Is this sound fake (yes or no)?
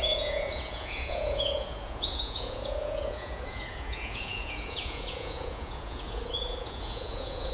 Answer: yes